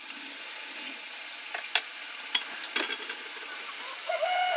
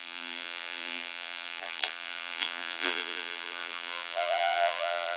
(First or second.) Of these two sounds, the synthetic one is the second